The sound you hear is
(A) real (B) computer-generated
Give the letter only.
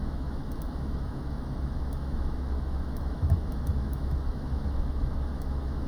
B